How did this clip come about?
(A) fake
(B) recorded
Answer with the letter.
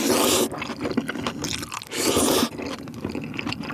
B